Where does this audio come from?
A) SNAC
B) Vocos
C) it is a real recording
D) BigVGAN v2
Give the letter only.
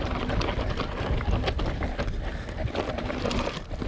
C